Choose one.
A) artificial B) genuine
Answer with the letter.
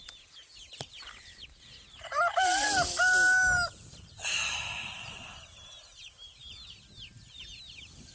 B